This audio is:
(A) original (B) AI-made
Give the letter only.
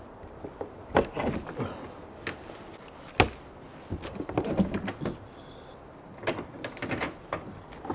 A